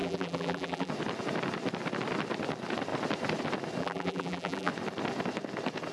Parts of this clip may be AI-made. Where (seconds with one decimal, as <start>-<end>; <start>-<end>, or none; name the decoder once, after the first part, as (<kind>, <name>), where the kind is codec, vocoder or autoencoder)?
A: 0.0-0.9 (vocoder, BigVGAN v2); 3.8-4.7